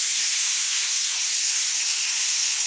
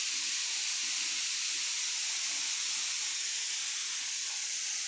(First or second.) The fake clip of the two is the first